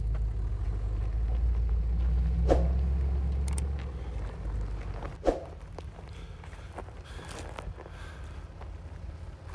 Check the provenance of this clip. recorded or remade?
recorded